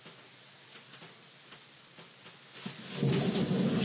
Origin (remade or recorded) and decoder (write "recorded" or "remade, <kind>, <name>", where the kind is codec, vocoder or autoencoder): recorded